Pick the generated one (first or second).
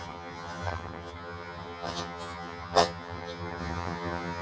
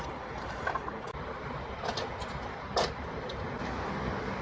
first